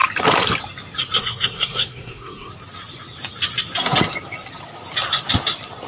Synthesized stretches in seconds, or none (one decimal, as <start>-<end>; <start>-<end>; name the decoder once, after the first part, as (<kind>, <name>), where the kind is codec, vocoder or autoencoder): 1.2-2.5 (codec, SNAC)